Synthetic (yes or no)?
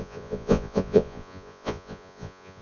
yes